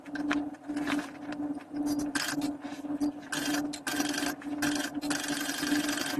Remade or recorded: recorded